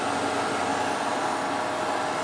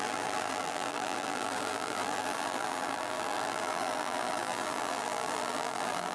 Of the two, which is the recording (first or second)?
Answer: first